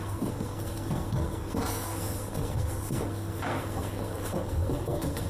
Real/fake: fake